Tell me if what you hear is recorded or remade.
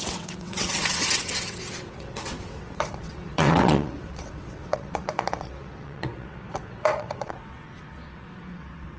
remade